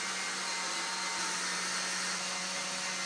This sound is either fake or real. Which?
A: real